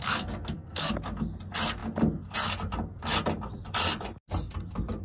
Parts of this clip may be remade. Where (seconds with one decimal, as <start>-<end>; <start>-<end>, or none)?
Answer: 0.0-0.9